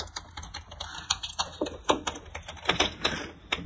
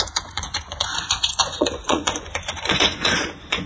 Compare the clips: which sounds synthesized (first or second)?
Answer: second